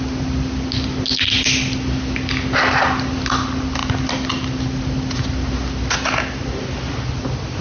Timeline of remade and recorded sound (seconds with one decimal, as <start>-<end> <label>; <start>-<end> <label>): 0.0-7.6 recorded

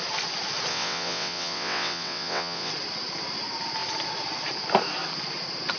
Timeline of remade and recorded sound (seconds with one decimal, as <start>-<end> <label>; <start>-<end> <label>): 0.0-0.7 recorded; 0.7-2.7 remade; 2.7-5.8 recorded

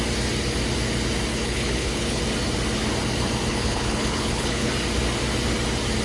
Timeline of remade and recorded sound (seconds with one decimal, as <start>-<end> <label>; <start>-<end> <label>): 0.0-1.3 recorded; 1.3-2.2 remade; 2.2-3.5 recorded; 3.5-4.7 remade; 4.7-6.0 recorded